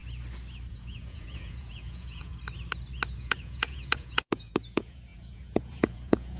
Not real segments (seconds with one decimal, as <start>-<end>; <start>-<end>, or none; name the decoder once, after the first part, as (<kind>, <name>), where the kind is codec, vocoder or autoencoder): 0.7-2.3 (vocoder, Vocos); 3.2-6.4